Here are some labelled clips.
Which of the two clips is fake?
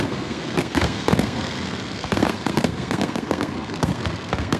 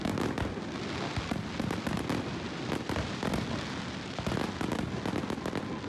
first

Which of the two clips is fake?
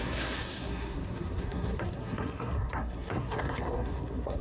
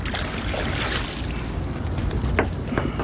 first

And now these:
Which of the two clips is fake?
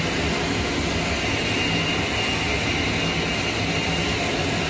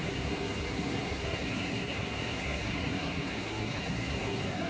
second